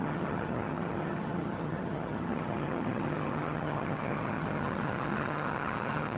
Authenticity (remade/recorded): remade